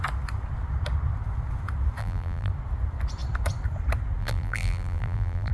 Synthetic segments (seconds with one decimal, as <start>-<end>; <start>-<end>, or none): 2.0-2.5; 4.2-5.5